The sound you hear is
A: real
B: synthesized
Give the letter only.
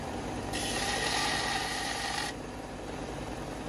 B